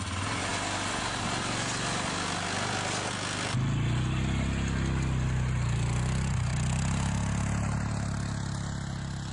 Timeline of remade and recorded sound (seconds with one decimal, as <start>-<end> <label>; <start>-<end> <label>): 0.0-9.3 recorded